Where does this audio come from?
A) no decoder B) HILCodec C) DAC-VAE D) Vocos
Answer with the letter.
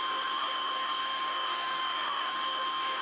C